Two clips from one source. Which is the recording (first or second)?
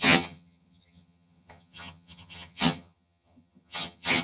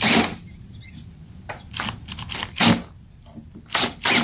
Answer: second